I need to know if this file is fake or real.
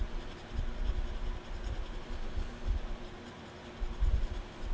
real